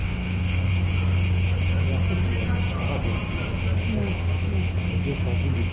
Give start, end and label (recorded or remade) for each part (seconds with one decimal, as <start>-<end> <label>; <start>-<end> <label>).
0.0-0.7 remade; 0.7-5.7 recorded